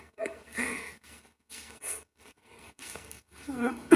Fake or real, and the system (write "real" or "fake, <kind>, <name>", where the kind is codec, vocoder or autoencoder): fake, codec, SNAC